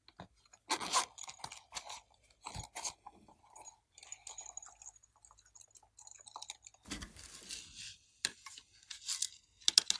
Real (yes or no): yes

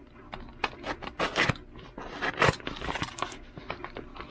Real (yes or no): yes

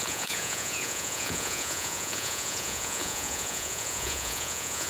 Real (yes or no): no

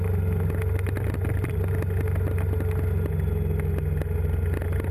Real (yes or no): yes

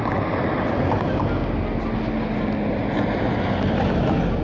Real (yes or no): yes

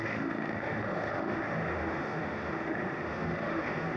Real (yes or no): no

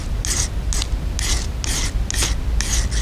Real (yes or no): yes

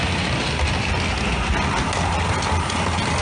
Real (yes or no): yes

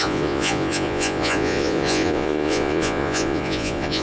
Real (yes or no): no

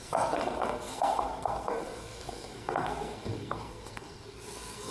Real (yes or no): no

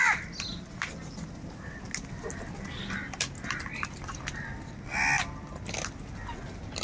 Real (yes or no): yes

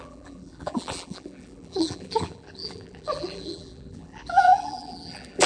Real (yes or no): no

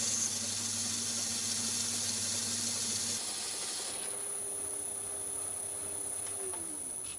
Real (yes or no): yes